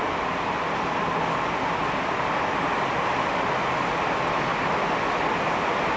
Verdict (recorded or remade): recorded